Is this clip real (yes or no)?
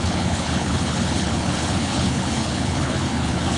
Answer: no